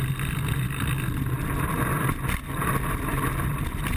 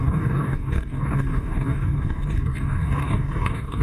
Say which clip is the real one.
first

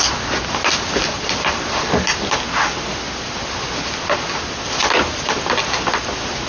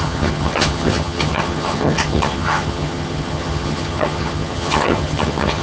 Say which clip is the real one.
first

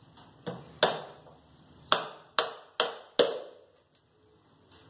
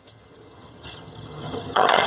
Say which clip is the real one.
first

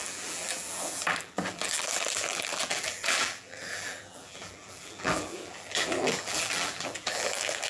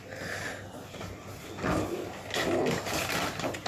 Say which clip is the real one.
second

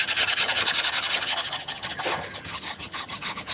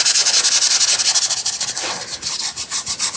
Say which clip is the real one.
second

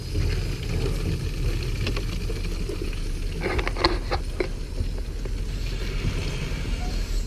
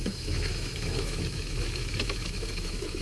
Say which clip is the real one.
first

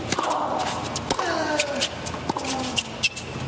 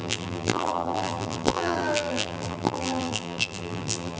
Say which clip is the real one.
first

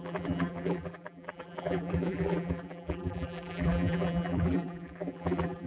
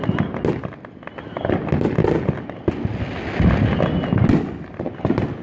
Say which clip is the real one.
second